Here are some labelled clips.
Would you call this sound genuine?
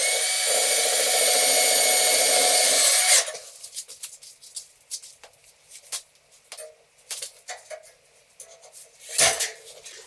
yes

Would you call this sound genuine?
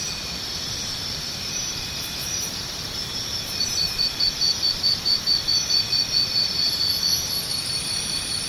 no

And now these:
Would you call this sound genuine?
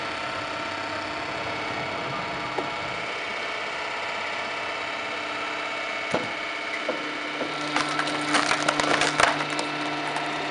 yes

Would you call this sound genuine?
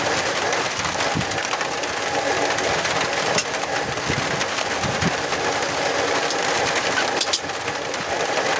yes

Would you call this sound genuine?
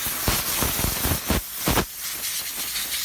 yes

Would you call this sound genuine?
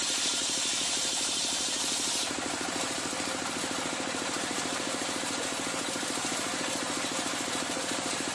no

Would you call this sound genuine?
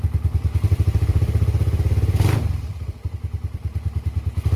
no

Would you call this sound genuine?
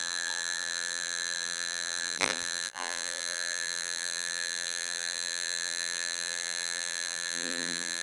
no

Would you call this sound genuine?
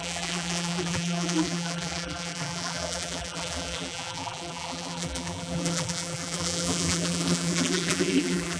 no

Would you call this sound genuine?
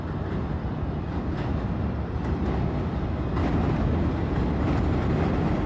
yes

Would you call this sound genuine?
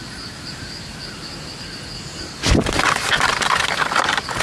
yes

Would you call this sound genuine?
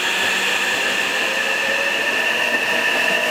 yes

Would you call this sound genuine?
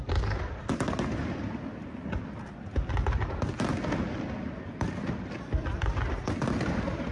yes